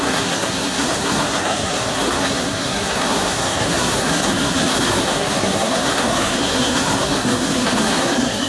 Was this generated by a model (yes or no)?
yes